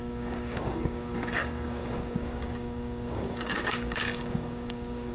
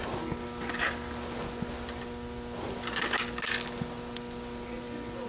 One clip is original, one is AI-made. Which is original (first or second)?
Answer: second